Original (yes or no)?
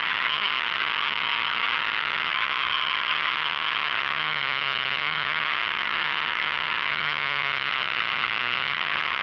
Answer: no